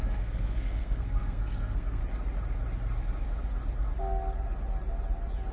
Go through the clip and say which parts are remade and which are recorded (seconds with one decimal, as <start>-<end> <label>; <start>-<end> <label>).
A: 0.0-2.0 remade; 2.0-5.5 recorded